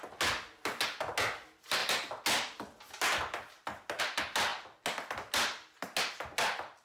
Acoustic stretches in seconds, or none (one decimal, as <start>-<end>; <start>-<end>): 0.0-6.8